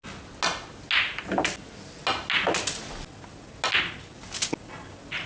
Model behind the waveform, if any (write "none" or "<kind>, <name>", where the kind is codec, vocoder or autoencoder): none